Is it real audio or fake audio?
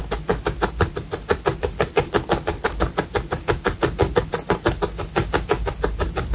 real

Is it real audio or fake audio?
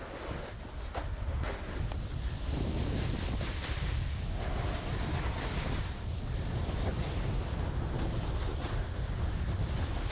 real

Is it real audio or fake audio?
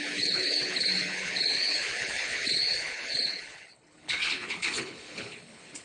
fake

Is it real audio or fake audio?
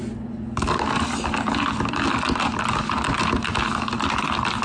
real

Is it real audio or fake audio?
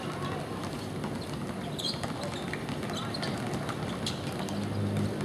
real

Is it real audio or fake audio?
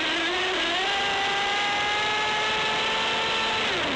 real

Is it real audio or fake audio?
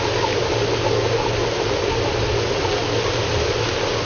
real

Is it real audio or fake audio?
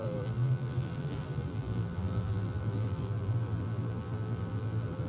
fake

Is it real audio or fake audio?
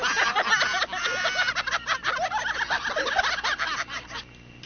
real